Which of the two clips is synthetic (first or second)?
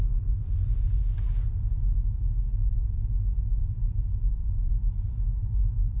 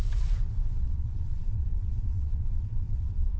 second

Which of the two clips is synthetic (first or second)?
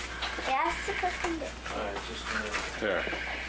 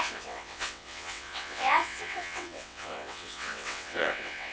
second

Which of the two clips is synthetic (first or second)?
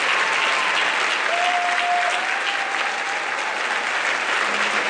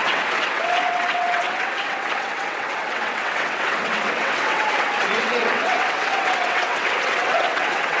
second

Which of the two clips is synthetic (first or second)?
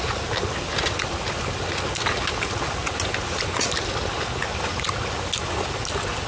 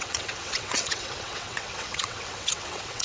second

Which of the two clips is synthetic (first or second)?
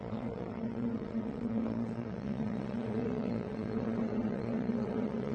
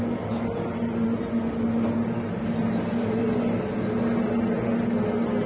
first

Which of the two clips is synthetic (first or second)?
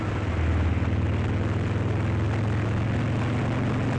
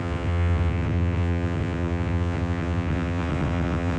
second